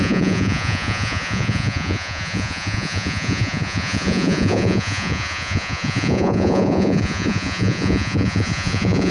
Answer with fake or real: fake